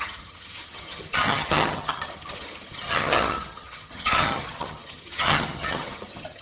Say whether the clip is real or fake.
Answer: fake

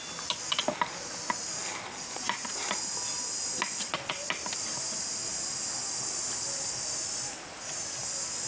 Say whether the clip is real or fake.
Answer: real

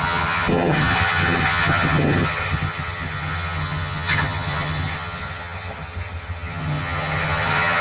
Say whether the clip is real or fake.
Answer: fake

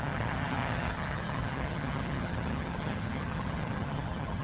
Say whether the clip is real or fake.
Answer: fake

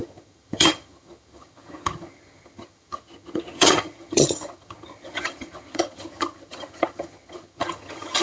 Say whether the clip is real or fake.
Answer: fake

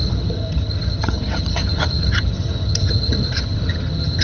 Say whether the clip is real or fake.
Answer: fake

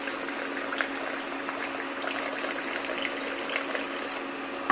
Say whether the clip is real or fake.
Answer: real